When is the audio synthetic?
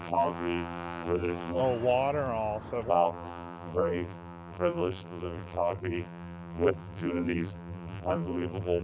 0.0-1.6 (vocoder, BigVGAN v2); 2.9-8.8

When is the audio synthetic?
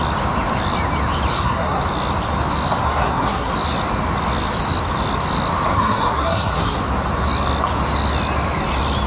1.3-1.8 (codec, SNAC); 2.8-3.5; 5.7-6.8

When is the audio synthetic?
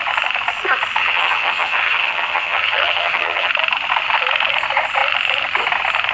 1.0-3.5 (vocoder, HiFi-GAN)